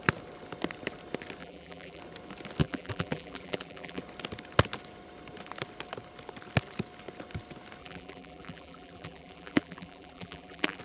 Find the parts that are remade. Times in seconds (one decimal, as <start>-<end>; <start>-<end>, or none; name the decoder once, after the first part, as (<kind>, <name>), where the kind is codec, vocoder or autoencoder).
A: 1.4-2.0 (vocoder, BigVGAN v2); 2.6-4.0; 7.8-10.8